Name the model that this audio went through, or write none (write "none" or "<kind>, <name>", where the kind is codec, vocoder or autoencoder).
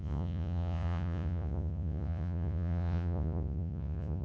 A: vocoder, Vocos